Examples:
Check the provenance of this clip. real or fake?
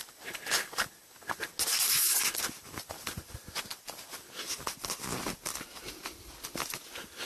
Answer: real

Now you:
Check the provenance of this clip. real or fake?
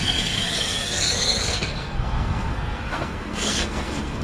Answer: fake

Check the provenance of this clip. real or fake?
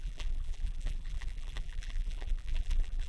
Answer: fake